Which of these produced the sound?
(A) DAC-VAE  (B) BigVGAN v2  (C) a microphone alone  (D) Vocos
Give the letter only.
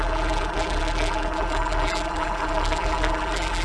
B